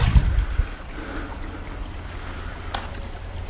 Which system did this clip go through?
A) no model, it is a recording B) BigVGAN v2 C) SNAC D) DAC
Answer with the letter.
A